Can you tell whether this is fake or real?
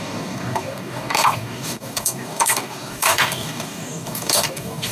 fake